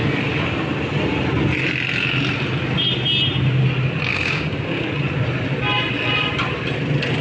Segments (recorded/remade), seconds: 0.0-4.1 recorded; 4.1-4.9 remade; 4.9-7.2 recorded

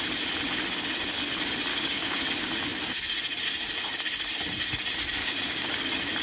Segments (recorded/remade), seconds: 0.0-1.7 recorded; 1.7-2.2 remade; 2.2-5.2 recorded; 5.2-5.7 remade; 5.7-6.2 recorded

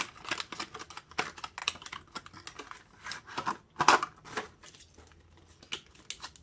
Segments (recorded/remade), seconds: 0.0-6.4 recorded

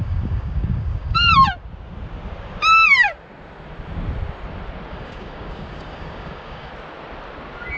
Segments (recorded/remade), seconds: 0.0-1.3 remade; 1.3-4.9 recorded; 4.9-6.7 remade; 6.7-7.8 recorded

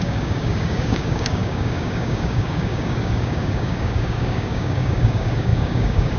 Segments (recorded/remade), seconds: 0.0-6.2 remade

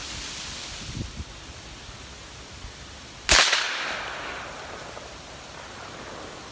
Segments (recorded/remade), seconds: 0.0-6.5 recorded

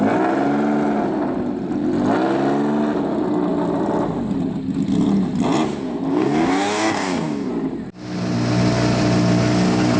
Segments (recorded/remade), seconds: 0.0-6.1 recorded; 6.1-7.5 remade; 7.5-10.0 recorded

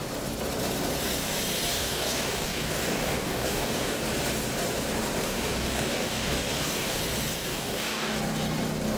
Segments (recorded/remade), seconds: 0.0-1.7 recorded; 1.7-4.0 remade; 4.0-5.2 recorded; 5.2-7.0 remade; 7.0-7.5 recorded; 7.5-8.2 remade; 8.2-9.0 recorded